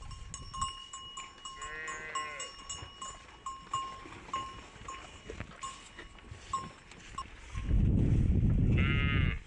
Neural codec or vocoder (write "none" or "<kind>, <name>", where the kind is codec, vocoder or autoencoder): none